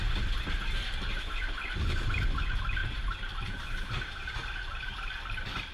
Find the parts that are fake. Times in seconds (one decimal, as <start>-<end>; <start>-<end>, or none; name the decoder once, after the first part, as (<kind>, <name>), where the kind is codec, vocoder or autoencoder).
2.8-3.5 (vocoder, BigVGAN v2)